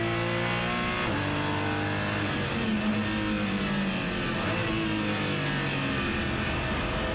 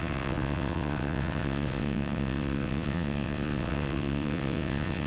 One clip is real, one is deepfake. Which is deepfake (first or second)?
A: second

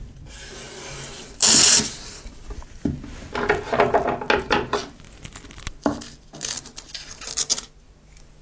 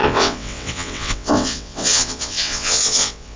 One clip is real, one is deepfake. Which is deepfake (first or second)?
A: second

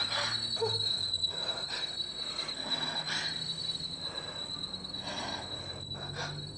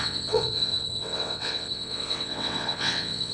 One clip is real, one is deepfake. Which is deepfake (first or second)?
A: second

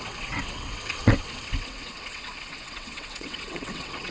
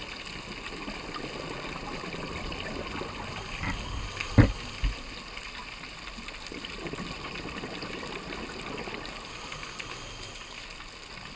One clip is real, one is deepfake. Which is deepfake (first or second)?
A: first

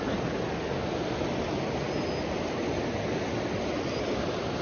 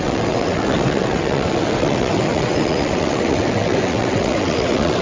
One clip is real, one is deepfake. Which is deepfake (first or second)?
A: second